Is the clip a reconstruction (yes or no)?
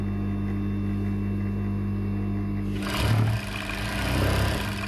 no